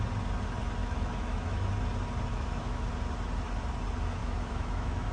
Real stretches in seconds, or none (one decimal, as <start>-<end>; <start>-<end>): 0.0-0.8; 1.7-2.3; 2.9-4.2